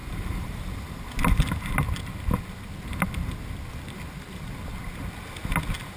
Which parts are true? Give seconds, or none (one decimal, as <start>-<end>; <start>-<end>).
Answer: 1.0-6.0